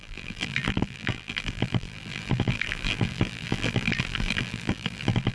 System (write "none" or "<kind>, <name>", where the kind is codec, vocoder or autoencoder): vocoder, BigVGAN v2